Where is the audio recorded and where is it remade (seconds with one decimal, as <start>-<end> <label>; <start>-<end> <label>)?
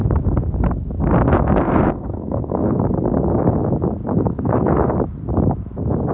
0.0-1.3 recorded; 1.3-2.8 remade; 2.8-4.1 recorded; 4.1-4.9 remade; 4.9-6.1 recorded